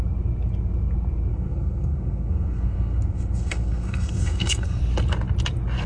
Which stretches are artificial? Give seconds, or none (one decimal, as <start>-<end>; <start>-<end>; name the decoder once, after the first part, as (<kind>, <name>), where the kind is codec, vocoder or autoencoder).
1.3-4.8 (codec, SNAC)